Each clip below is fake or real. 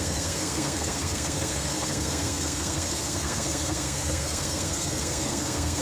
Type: fake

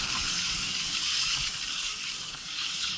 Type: fake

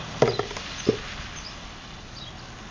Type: real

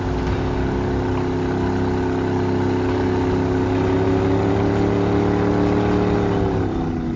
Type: real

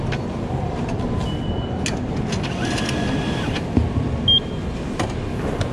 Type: real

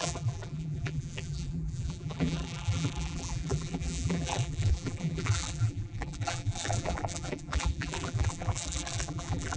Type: fake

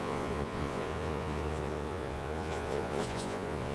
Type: fake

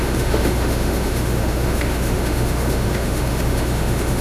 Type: fake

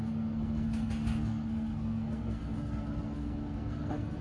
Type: fake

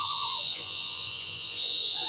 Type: fake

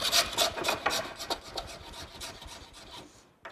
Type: real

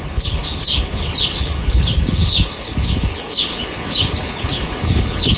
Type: fake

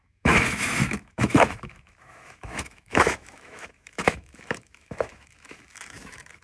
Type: fake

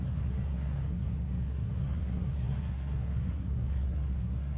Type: fake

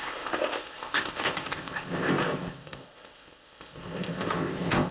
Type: fake